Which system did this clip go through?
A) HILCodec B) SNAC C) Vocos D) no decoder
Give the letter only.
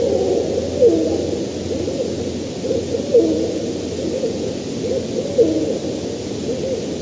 D